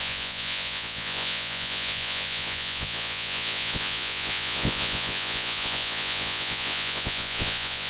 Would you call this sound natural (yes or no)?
no